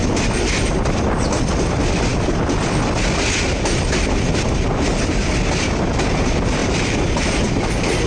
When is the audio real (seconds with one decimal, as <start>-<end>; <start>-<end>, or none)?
0.0-8.1